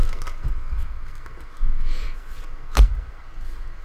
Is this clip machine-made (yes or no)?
yes